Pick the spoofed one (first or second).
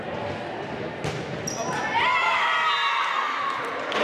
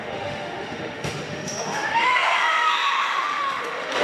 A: second